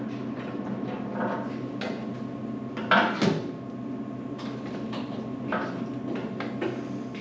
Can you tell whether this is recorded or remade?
recorded